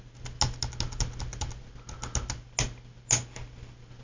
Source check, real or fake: real